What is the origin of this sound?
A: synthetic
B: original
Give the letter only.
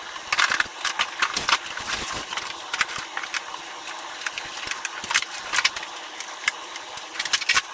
A